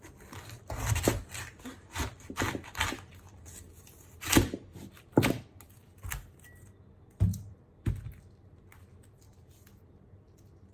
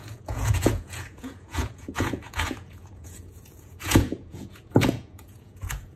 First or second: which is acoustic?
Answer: first